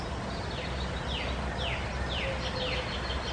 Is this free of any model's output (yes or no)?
yes